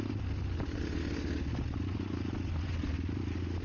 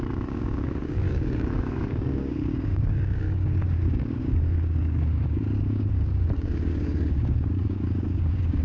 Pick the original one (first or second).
first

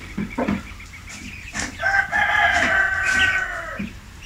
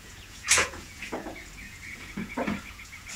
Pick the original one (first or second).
first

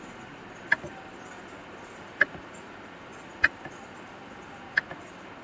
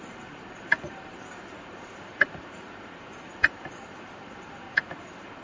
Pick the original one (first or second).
first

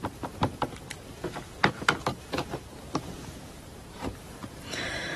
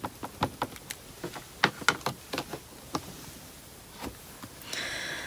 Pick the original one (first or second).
second